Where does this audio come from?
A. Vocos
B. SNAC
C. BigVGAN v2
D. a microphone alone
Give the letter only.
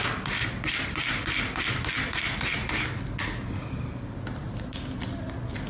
D